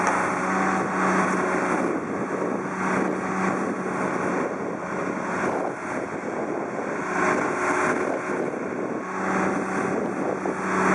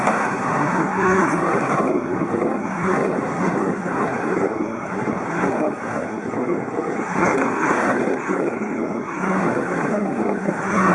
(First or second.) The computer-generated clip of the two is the second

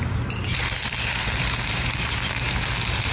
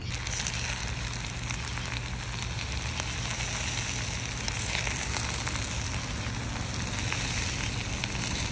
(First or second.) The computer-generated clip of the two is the first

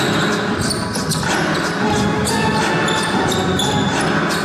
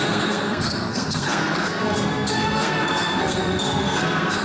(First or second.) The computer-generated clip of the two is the second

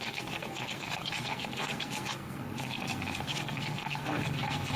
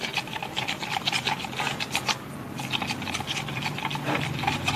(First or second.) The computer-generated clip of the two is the first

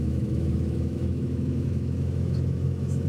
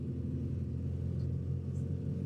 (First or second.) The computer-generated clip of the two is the first